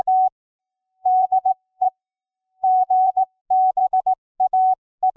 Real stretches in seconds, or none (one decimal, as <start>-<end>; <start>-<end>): 0.0-0.6; 3.4-5.2